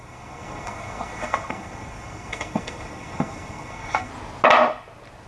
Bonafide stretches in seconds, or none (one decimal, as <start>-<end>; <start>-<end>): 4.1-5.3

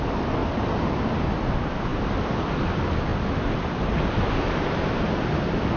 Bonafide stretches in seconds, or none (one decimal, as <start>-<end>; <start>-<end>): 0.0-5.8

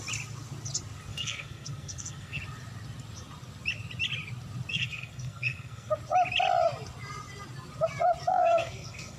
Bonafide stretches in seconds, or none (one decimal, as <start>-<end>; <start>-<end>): 0.0-1.1; 2.4-4.7; 5.9-8.3

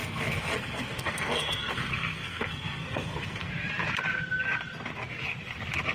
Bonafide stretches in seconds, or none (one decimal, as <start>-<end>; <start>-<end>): 3.5-5.9

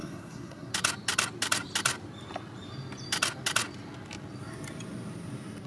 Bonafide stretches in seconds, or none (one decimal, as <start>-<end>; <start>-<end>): 0.7-5.7